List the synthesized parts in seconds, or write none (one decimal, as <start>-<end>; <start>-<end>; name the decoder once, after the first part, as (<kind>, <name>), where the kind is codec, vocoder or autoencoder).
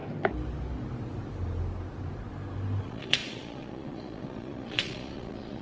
2.8-5.6 (vocoder, Vocos)